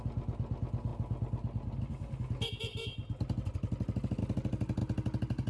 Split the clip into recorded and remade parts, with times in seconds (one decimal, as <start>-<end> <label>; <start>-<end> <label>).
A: 0.0-5.5 recorded